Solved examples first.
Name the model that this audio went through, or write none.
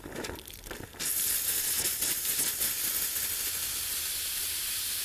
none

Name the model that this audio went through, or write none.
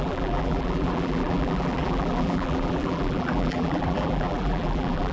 vocoder, BigVGAN v2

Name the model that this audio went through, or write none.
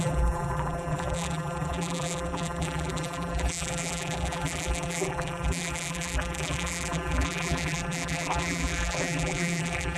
vocoder, BigVGAN v2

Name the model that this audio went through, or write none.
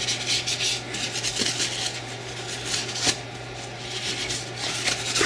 none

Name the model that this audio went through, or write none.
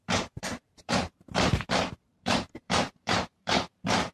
vocoder, BigVGAN v2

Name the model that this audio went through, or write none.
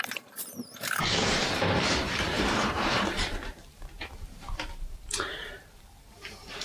vocoder, BigVGAN v2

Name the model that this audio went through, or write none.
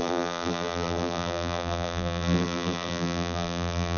vocoder, BigVGAN v2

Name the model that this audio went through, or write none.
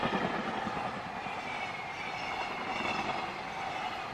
vocoder, BigVGAN v2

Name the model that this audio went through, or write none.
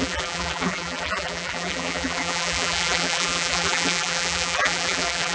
vocoder, BigVGAN v2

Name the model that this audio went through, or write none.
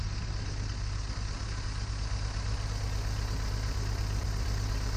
none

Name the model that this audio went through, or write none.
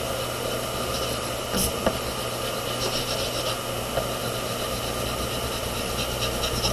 none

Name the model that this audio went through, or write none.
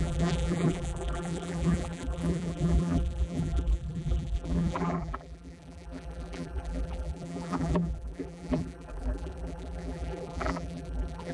vocoder, BigVGAN v2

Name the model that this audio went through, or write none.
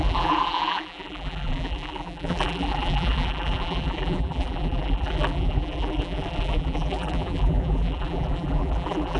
vocoder, BigVGAN v2